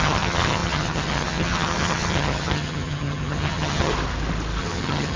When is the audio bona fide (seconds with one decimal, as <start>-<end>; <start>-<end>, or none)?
3.9-4.6